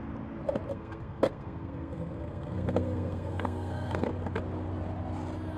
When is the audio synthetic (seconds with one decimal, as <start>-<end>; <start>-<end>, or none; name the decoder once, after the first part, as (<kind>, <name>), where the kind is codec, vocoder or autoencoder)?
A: 0.7-4.1 (codec, SNAC)